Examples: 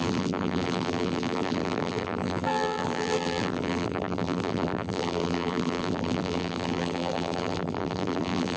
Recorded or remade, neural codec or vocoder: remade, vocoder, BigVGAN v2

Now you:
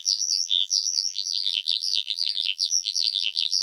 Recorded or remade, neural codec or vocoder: remade, vocoder, BigVGAN v2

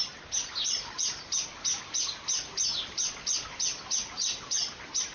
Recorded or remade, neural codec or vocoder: recorded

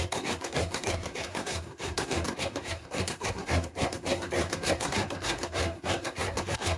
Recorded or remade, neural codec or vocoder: remade, codec, SNAC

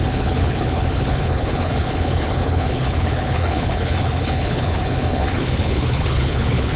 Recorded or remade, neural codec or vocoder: remade, codec, HILCodec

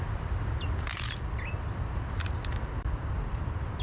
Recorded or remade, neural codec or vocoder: recorded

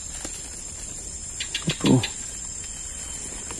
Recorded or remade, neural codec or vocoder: recorded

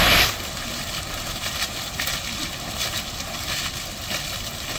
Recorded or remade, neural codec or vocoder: recorded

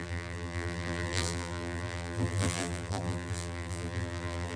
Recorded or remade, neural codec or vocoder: remade, vocoder, BigVGAN v2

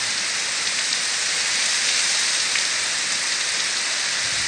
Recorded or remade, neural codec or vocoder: recorded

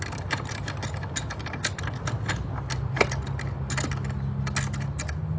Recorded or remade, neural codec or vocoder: recorded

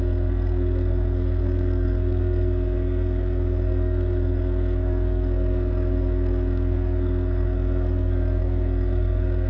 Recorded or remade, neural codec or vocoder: remade, codec, SNAC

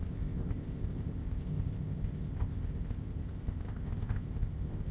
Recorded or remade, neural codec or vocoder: remade, codec, ZipCodec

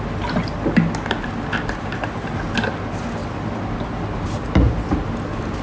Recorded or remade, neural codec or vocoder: recorded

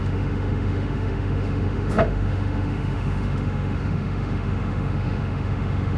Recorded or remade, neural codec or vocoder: remade, autoencoder, DAC-VAE